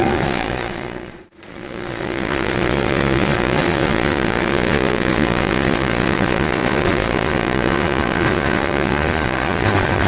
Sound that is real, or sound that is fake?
fake